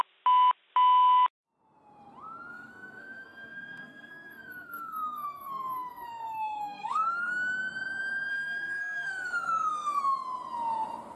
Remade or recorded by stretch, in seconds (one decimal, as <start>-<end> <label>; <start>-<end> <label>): 0.0-2.5 recorded; 2.5-7.3 remade; 7.3-8.3 recorded; 8.3-10.0 remade; 10.0-11.2 recorded